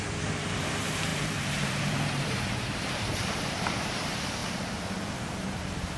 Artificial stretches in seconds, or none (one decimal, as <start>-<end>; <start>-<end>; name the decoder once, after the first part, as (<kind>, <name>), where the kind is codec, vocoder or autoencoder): 0.0-4.4 (vocoder, BigVGAN v2); 5.2-6.0